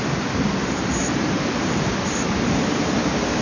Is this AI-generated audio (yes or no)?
yes